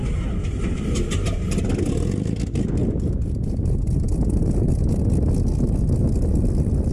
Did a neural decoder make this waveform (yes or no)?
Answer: no